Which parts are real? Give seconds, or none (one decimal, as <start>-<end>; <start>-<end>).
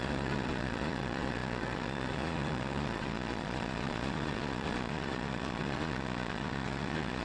none